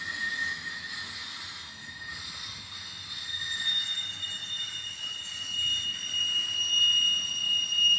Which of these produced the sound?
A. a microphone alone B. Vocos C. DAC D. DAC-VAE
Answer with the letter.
A